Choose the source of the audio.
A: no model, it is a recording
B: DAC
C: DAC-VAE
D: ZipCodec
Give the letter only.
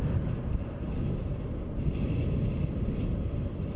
A